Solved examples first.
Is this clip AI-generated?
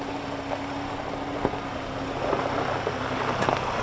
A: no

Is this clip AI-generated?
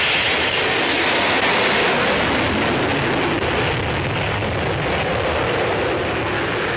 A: no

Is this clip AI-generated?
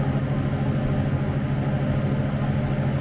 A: no